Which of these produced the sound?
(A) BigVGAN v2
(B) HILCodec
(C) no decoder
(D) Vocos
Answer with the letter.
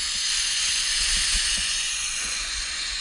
D